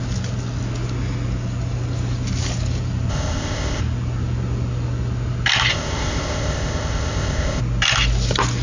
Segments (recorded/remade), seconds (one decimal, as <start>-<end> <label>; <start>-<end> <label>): 0.0-3.1 recorded; 3.1-3.8 remade; 3.8-5.7 recorded; 5.7-7.6 remade; 7.6-8.6 recorded